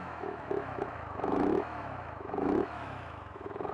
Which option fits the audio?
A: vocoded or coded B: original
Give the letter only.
A